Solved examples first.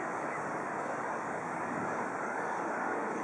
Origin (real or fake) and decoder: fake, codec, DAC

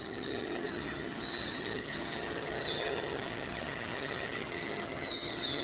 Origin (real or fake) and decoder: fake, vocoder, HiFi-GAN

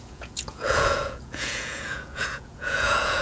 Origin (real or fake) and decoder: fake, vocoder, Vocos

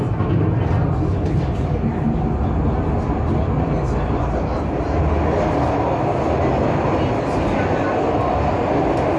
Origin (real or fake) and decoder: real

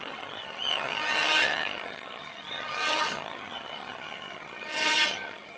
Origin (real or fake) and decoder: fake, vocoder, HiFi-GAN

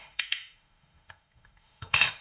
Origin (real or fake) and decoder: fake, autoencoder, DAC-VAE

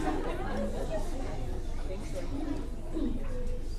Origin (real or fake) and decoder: real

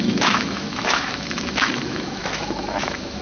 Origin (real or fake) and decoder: fake, autoencoder, DAC-VAE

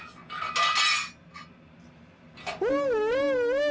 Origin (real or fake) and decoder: real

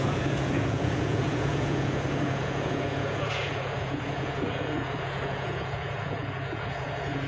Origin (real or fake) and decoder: fake, vocoder, Vocos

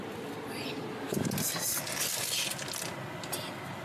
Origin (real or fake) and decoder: real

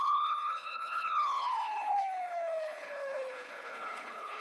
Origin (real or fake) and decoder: fake, codec, HILCodec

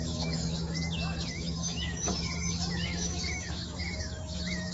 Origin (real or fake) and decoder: fake, autoencoder, DAC-VAE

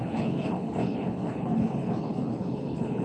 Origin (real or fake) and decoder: fake, codec, HILCodec